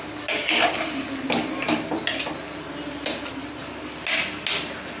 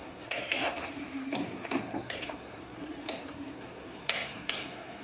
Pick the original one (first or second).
first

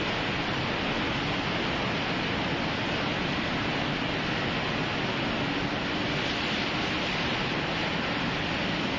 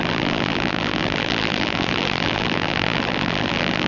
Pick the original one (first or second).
first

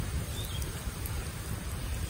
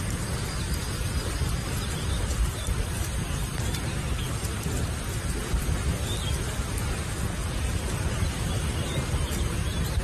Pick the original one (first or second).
second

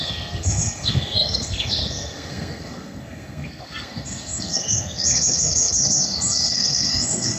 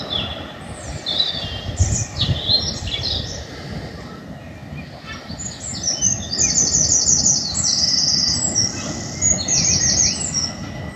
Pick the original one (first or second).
second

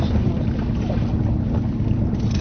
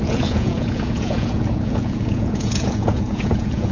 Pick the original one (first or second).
first